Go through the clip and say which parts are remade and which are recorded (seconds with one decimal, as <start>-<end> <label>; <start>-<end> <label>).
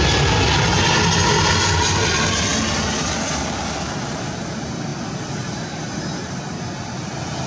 0.0-7.5 recorded